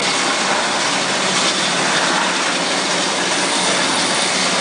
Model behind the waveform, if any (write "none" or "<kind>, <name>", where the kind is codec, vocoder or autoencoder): none